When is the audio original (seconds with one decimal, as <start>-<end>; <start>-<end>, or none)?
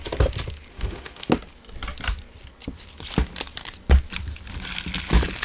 0.0-0.7; 1.3-5.4